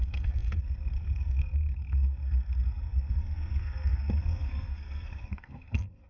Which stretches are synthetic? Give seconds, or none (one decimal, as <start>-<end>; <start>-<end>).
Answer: 0.0-6.1